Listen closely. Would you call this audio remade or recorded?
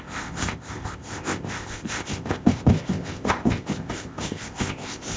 remade